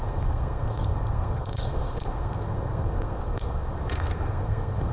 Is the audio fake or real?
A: fake